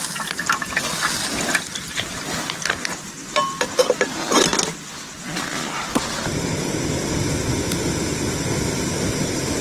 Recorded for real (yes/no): yes